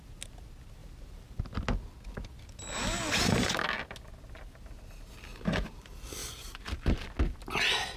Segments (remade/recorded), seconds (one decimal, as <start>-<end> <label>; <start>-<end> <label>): 0.0-0.8 recorded; 0.8-1.4 remade; 1.4-5.3 recorded; 5.3-5.8 remade; 5.8-6.2 recorded; 6.2-7.1 remade; 7.1-8.0 recorded